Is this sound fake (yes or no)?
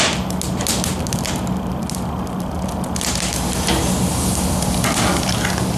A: no